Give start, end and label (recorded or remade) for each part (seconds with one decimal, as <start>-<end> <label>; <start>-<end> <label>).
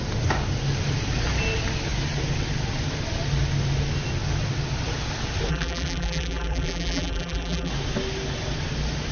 0.0-5.5 recorded; 5.5-7.7 remade; 7.7-9.1 recorded